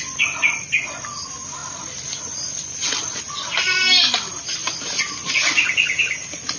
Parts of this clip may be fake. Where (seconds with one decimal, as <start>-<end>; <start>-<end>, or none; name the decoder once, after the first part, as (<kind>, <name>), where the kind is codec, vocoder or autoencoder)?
none